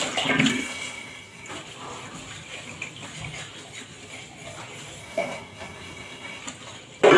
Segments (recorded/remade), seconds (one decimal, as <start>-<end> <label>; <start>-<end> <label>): 0.0-0.5 recorded; 0.5-1.5 remade; 1.5-5.0 recorded; 5.0-6.4 remade; 6.4-7.2 recorded